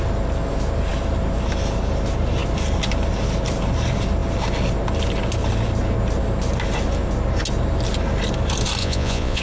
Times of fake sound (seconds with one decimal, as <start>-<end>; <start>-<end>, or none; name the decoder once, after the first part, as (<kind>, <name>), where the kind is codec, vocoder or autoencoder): 8.8-9.4 (vocoder, Vocos)